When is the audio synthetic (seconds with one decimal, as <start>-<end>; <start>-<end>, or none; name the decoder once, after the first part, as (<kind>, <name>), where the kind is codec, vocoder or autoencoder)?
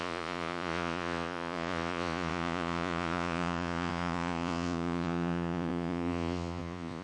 0.0-7.0 (vocoder, Vocos)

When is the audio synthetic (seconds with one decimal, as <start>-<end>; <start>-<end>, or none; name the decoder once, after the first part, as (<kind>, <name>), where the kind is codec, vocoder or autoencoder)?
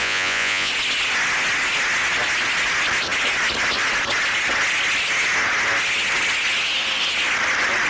0.0-0.7 (vocoder, Vocos)